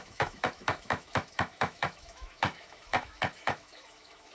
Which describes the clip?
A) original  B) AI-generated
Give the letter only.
B